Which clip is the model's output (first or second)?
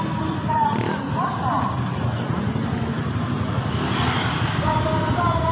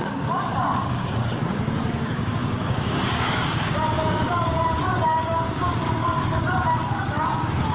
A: second